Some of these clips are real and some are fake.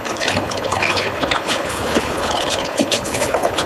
fake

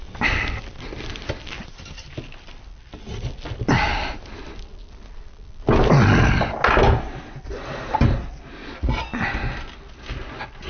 real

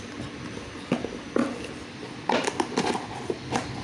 real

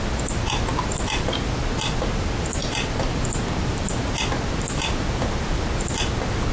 real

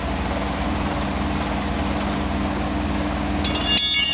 real